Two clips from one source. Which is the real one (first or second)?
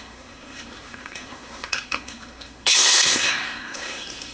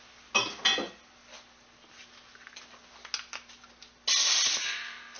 second